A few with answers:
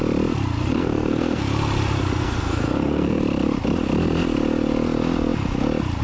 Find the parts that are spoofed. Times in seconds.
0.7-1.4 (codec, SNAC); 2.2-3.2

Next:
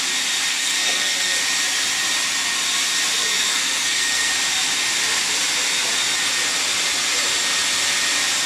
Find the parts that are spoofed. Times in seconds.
0.5-1.4 (codec, SNAC); 3.2-4.3

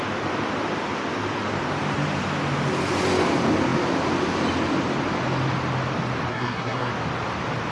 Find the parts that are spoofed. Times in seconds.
6.3-6.9 (codec, SNAC)

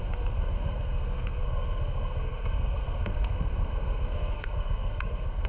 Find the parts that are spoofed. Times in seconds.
0.0-5.5 (codec, SNAC)

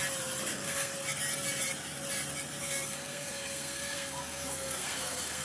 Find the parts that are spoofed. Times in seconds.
0.5-0.9 (codec, SNAC); 2.6-5.4